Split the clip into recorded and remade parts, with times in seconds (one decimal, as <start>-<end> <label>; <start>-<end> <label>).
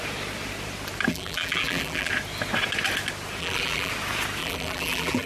0.0-1.1 recorded; 1.1-2.1 remade; 2.1-3.4 recorded; 3.4-3.9 remade; 3.9-4.4 recorded; 4.4-5.3 remade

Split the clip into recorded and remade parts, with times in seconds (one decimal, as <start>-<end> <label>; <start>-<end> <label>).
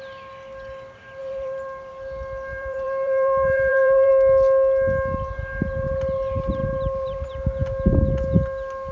0.0-1.2 recorded; 1.2-1.9 remade; 1.9-2.5 recorded; 2.5-4.1 remade; 4.1-6.6 recorded; 6.6-7.3 remade; 7.3-8.9 recorded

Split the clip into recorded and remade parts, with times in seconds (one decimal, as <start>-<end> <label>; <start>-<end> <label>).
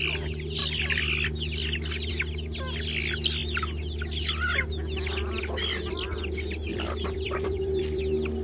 0.0-0.6 recorded; 0.6-2.1 remade; 2.1-6.7 recorded; 6.7-8.0 remade; 8.0-8.4 recorded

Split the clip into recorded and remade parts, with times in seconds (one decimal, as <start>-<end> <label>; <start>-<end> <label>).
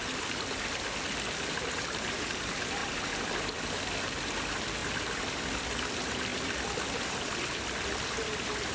0.0-1.1 remade; 1.1-2.8 recorded; 2.8-3.6 remade; 3.6-4.8 recorded; 4.8-5.6 remade; 5.6-8.7 recorded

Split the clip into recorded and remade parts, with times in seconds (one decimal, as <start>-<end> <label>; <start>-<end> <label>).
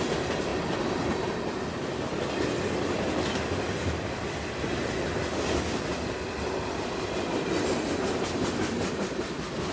0.0-9.7 recorded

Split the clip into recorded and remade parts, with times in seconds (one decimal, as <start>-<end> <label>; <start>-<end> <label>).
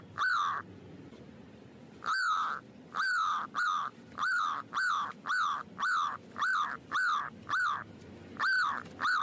0.0-6.5 remade; 6.5-8.0 recorded; 8.0-9.2 remade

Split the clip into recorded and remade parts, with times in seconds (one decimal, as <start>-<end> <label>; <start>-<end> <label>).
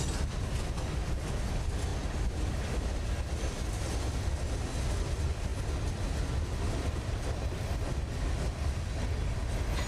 0.0-9.9 recorded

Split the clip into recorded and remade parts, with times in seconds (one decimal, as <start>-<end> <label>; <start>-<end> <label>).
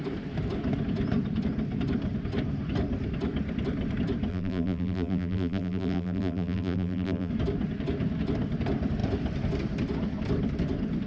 0.0-4.3 recorded; 4.3-7.3 remade; 7.3-11.1 recorded